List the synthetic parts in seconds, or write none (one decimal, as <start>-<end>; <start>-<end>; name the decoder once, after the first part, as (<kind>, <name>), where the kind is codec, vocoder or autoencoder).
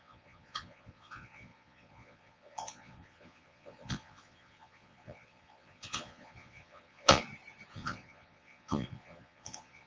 0.0-7.2 (vocoder, Vocos); 7.7-9.9